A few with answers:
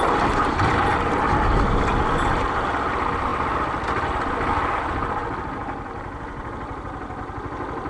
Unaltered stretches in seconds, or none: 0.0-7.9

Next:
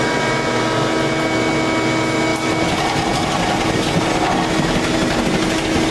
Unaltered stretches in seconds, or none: 0.0-5.9

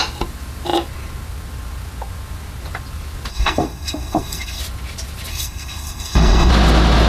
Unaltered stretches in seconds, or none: 0.0-3.3; 4.6-5.3; 6.5-7.1